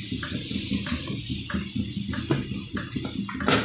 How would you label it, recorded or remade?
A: recorded